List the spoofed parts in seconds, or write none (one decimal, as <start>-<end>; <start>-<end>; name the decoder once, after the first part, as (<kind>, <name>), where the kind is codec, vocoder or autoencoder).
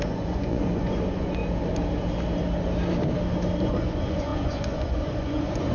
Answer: 0.0-1.4 (vocoder, Vocos); 3.6-5.7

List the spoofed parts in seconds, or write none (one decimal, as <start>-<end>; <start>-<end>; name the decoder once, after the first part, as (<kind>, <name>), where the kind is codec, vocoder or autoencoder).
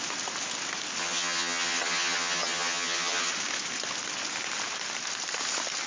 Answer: 1.0-3.3 (vocoder, HiFi-GAN)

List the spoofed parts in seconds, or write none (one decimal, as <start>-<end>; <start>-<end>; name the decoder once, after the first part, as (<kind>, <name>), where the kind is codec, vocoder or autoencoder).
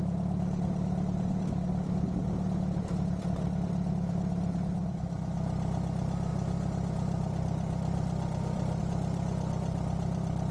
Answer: 6.3-8.8 (vocoder, BigVGAN v2)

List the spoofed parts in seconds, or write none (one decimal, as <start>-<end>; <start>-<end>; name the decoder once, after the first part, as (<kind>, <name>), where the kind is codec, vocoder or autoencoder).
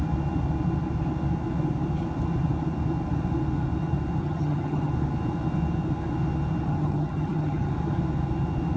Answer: 4.2-4.9 (vocoder, HiFi-GAN); 6.7-7.7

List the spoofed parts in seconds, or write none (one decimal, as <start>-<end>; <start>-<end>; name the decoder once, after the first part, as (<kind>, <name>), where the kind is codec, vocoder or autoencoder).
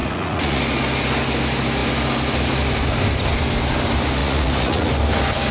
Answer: 0.0-0.6 (vocoder, Vocos); 4.2-4.9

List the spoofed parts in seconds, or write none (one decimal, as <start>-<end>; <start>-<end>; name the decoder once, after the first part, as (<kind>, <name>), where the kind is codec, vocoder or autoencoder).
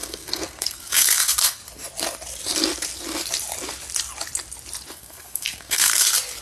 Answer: 0.0-1.6 (codec, SNAC); 4.9-5.9